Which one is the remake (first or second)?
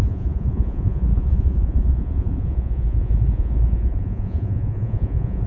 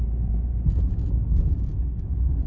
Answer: first